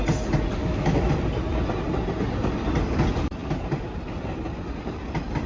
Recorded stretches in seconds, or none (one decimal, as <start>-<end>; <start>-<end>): 0.0-0.6; 1.1-5.5